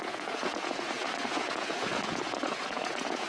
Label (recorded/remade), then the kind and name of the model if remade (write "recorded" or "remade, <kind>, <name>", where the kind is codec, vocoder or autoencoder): remade, vocoder, Vocos